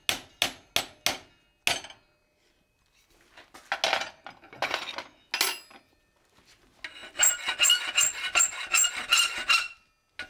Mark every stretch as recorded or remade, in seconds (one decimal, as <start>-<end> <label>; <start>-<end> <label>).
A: 0.0-10.3 recorded